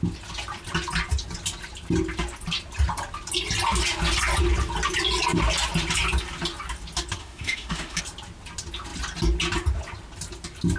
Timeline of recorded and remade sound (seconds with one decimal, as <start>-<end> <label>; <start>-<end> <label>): 0.0-7.2 recorded; 7.2-8.0 remade; 8.0-10.8 recorded